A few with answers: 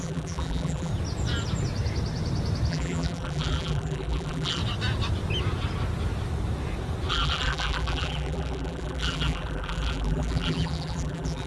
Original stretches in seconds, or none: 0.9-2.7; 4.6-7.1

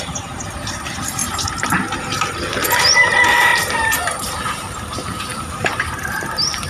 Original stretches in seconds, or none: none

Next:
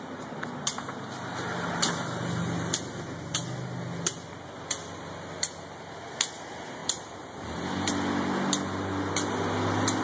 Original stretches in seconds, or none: 0.0-6.8; 7.9-10.0

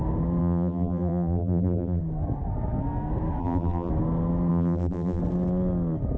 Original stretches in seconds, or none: 0.0-0.4; 2.0-3.4; 3.9-4.5; 5.2-6.2

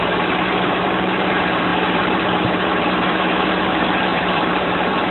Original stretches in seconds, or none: none